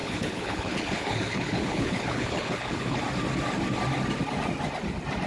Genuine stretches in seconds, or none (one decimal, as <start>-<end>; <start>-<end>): 3.0-5.3